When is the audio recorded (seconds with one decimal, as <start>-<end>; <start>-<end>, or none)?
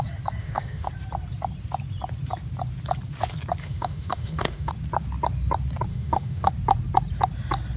0.0-0.4; 0.9-3.6; 4.7-5.9; 6.5-7.8